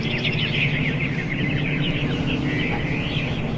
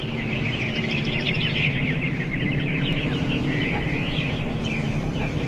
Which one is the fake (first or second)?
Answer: second